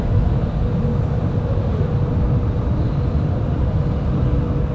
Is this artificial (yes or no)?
no